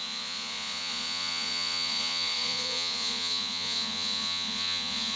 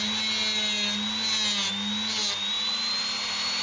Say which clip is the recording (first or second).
second